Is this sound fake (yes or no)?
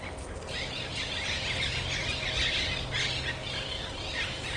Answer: no